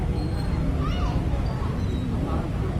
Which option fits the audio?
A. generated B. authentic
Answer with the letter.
B